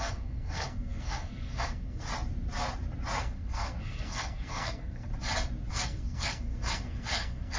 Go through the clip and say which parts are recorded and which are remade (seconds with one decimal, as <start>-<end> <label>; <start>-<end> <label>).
0.0-2.1 remade; 2.1-3.2 recorded; 3.2-5.1 remade; 5.1-5.7 recorded; 5.7-7.6 remade